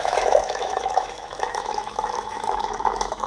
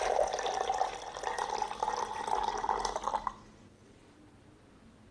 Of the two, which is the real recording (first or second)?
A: second